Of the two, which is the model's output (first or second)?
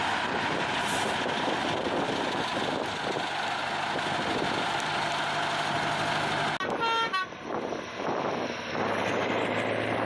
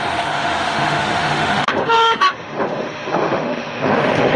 second